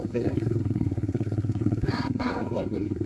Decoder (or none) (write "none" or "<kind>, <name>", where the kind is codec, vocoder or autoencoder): codec, SNAC